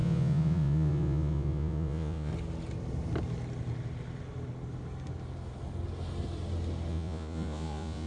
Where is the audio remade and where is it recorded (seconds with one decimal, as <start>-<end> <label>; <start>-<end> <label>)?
0.0-2.3 remade; 2.3-6.9 recorded; 6.9-8.1 remade

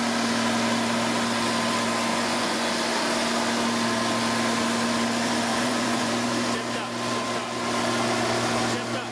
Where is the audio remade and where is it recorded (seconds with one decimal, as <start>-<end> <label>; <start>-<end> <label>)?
0.0-2.1 recorded; 2.1-2.7 remade; 2.7-5.5 recorded; 5.5-6.1 remade; 6.1-9.1 recorded

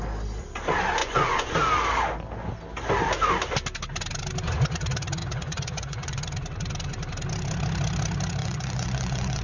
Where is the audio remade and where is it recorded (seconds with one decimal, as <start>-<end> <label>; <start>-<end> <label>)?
0.0-1.0 recorded; 1.0-1.5 remade; 1.5-5.2 recorded; 5.2-6.2 remade; 6.2-8.4 recorded; 8.4-9.4 remade

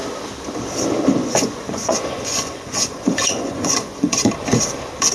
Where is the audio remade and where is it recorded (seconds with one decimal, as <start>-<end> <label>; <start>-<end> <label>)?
0.0-1.2 recorded; 1.2-4.3 remade; 4.3-5.1 recorded

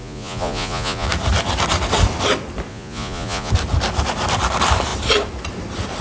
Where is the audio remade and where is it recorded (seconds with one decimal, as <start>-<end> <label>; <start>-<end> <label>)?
0.0-1.1 remade; 1.1-2.7 recorded; 2.7-3.5 remade; 3.5-6.0 recorded

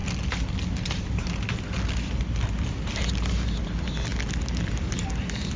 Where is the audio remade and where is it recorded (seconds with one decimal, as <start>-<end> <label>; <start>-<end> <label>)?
0.0-5.6 recorded

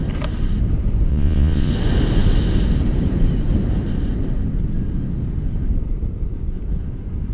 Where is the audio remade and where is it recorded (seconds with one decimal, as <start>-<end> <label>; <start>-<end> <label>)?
0.0-1.1 recorded; 1.1-1.7 remade; 1.7-7.3 recorded

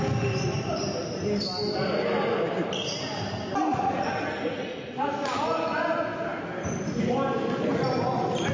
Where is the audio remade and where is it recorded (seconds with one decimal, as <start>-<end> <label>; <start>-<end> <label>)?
0.0-3.7 recorded; 3.7-4.9 remade; 4.9-8.5 recorded